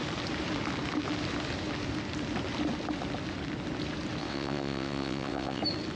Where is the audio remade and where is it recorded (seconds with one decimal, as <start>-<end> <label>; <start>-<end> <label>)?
0.0-4.2 recorded; 4.2-5.6 remade; 5.6-6.0 recorded